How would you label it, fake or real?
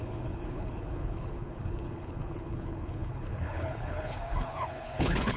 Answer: fake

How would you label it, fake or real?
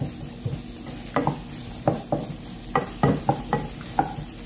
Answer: real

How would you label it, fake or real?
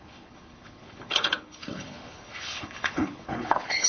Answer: fake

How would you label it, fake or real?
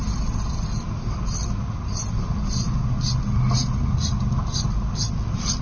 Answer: real